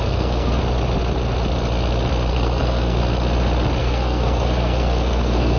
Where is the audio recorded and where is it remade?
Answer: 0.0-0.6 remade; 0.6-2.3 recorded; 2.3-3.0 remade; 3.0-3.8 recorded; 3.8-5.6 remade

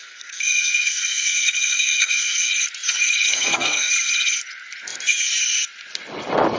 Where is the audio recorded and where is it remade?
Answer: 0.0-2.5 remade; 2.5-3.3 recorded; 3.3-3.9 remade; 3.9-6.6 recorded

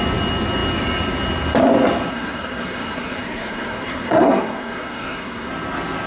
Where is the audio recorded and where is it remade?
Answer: 0.0-2.1 recorded; 2.1-5.5 remade; 5.5-6.1 recorded